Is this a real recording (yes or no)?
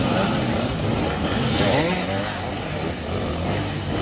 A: yes